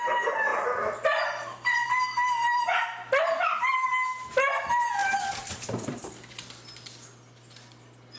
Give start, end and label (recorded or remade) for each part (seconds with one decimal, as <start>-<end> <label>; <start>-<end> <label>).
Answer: 0.0-0.5 recorded; 0.5-2.0 remade; 2.0-5.0 recorded; 5.0-6.3 remade; 6.3-8.2 recorded